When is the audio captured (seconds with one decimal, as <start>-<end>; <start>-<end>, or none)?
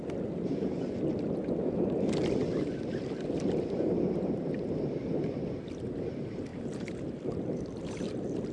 0.0-8.5